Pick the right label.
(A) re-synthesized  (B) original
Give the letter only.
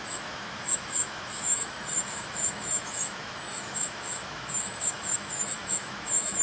A